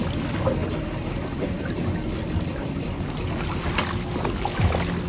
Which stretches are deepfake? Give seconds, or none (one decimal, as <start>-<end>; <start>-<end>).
0.6-3.7